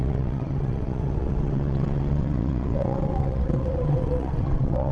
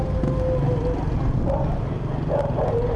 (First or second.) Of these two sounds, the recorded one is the second